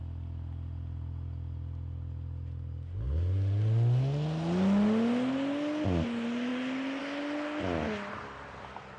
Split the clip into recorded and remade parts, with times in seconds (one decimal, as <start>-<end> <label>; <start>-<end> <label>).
0.0-9.0 recorded